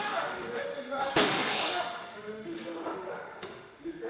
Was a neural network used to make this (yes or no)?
yes